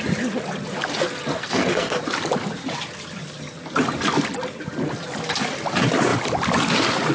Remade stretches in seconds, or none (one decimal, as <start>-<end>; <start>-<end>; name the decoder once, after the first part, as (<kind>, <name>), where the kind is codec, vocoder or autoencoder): 1.3-2.0 (codec, SNAC)